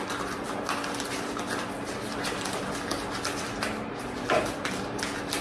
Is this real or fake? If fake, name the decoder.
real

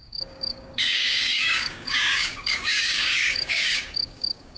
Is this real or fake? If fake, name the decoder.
fake, codec, DAC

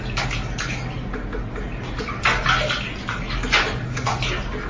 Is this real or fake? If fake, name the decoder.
real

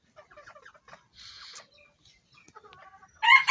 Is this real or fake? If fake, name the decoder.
real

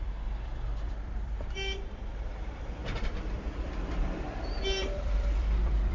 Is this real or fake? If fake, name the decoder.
fake, vocoder, BigVGAN v2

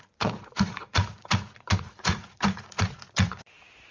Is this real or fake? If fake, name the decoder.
fake, vocoder, Vocos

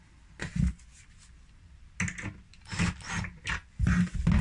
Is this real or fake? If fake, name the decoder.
real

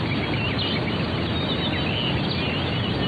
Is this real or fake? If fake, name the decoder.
real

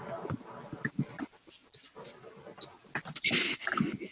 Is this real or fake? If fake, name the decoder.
real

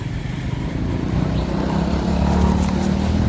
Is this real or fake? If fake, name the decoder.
real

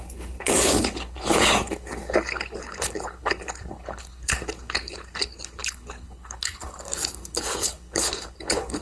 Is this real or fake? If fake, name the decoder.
fake, codec, HILCodec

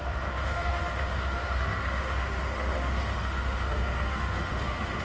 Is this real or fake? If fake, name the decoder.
fake, autoencoder, DAC-VAE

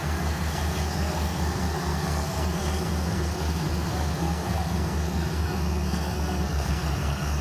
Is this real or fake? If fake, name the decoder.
fake, codec, SNAC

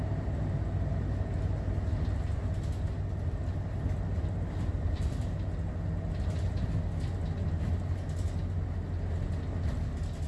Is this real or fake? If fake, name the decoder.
real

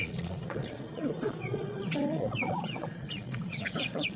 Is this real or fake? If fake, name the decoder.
fake, vocoder, Vocos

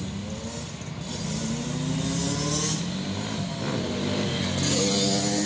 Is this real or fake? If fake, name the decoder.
real